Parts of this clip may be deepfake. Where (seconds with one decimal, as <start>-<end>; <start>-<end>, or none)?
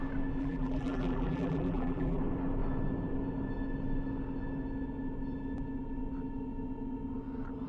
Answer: 0.4-2.2